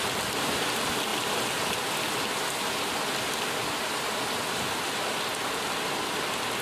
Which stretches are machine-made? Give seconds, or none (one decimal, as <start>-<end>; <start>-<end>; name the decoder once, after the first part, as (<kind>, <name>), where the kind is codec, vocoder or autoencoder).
5.3-5.9 (vocoder, BigVGAN v2)